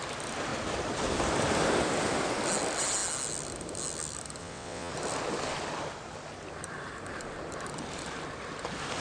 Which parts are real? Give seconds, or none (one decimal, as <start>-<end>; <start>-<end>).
0.0-4.4; 4.9-9.0

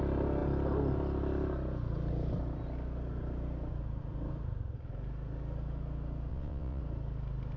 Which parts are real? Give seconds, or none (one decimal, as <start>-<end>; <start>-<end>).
0.0-6.3; 6.8-7.6

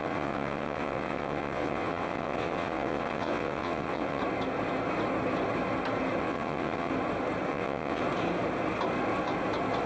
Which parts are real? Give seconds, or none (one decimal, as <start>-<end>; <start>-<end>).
4.2-6.2; 6.9-7.5; 8.0-9.9

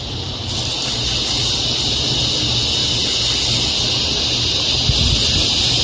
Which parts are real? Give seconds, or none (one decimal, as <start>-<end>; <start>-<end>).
0.0-5.8

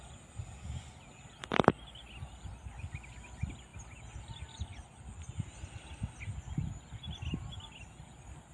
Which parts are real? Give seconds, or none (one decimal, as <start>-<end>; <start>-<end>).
0.0-8.5

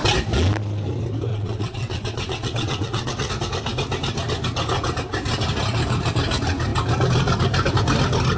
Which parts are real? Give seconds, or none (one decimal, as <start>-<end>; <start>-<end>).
0.0-1.3; 3.3-8.4

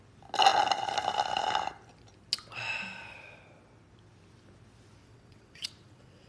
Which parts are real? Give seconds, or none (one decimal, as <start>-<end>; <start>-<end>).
0.0-5.0